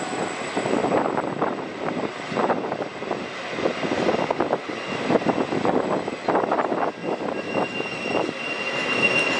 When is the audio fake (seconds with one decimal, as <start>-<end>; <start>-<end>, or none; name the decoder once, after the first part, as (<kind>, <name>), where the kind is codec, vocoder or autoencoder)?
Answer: 0.8-2.5 (vocoder, BigVGAN v2); 7.0-7.5